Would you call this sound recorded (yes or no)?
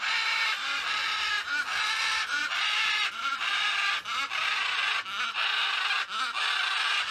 yes